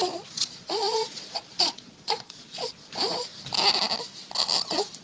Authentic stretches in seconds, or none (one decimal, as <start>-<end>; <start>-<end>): 3.3-4.6